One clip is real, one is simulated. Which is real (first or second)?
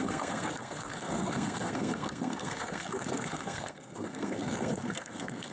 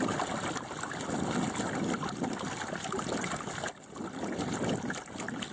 second